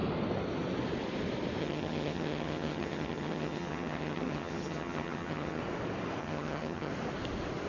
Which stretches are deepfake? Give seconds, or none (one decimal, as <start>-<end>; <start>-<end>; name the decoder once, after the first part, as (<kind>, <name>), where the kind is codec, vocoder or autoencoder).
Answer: 1.6-5.6 (vocoder, HiFi-GAN); 6.2-6.9

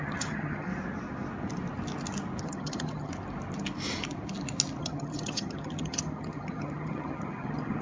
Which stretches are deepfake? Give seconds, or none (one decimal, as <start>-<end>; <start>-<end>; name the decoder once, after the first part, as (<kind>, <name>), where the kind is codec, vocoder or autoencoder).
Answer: 0.0-0.7 (vocoder, HiFi-GAN); 2.4-3.1; 4.8-7.8

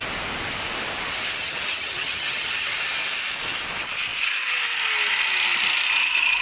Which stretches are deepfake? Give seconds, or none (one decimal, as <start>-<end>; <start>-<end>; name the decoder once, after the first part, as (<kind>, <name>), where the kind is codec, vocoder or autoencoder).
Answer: 1.4-2.7 (vocoder, HiFi-GAN)

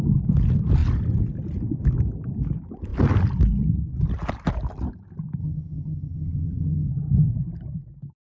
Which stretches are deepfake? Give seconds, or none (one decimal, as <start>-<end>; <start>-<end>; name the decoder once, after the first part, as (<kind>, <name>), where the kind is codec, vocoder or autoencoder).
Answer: 5.4-6.9 (vocoder, HiFi-GAN)

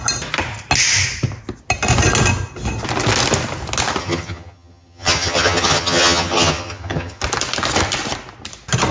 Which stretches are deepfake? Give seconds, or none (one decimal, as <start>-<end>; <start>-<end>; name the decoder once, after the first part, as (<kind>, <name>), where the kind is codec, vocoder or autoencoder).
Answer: 4.0-7.2 (vocoder, HiFi-GAN)